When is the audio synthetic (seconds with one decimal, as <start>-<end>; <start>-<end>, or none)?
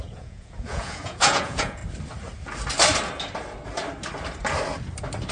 0.0-1.8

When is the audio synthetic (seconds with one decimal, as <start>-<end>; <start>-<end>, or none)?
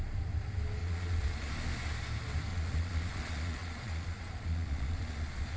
0.8-1.5; 2.5-5.6